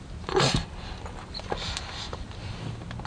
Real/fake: real